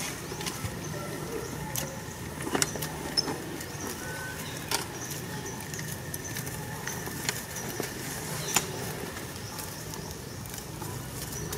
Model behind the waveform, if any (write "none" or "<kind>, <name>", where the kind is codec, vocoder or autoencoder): none